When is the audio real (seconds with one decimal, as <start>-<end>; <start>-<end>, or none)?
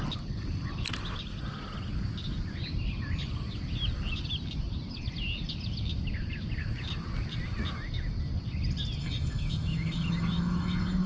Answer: 0.0-9.0